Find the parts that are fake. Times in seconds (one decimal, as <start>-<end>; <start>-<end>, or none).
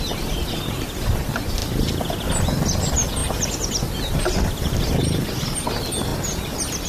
none